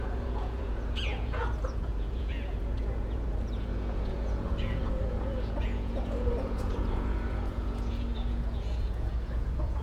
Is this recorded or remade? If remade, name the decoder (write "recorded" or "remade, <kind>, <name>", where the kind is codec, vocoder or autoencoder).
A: remade, vocoder, Vocos